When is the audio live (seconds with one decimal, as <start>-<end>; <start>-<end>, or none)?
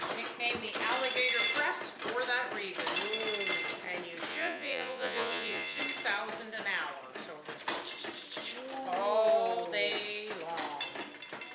0.0-4.3; 5.8-11.5